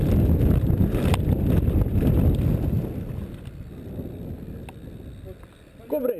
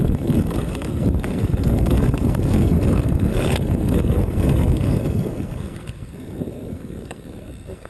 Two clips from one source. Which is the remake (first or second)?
second